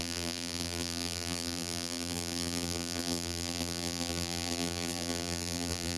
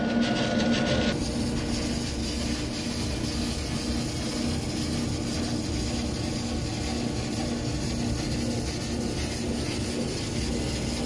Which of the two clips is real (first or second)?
second